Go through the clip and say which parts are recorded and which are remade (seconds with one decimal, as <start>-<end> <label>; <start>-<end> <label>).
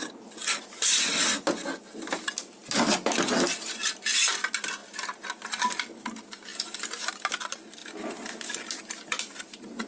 0.0-9.9 recorded